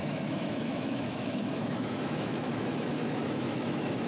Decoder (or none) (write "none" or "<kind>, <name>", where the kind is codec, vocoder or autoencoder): autoencoder, DAC-VAE